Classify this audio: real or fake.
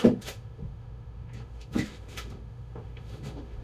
fake